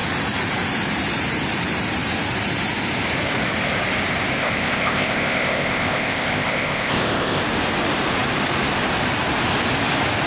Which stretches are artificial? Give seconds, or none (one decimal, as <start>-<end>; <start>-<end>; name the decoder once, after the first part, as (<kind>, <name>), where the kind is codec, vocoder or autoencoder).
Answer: 4.4-7.4 (codec, ZipCodec)